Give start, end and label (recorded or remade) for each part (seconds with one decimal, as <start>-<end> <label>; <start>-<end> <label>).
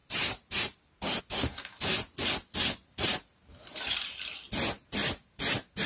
0.0-1.2 remade; 1.2-2.8 recorded; 2.8-4.3 remade; 4.3-5.0 recorded; 5.0-5.9 remade